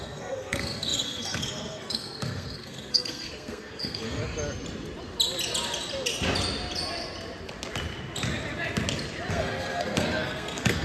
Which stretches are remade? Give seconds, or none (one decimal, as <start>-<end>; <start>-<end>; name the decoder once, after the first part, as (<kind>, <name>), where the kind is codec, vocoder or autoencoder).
0.0-4.2 (codec, SNAC); 9.3-10.8